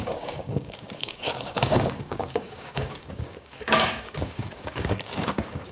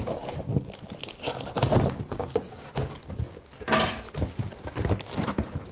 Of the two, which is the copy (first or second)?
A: first